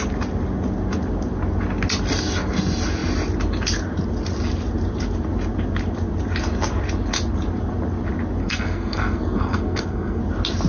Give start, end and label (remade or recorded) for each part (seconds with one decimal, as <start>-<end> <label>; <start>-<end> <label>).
0.0-8.4 recorded; 8.4-10.2 remade; 10.2-10.7 recorded